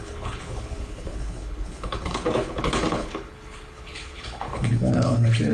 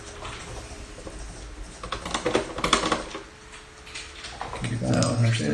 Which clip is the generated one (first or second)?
first